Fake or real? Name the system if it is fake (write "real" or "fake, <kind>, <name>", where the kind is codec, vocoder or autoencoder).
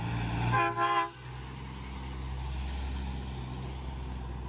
real